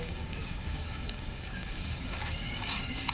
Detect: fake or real fake